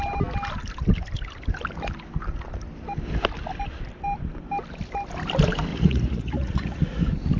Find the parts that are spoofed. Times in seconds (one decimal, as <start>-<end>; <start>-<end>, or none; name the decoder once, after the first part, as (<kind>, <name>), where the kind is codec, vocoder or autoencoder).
5.7-7.0 (vocoder, Vocos)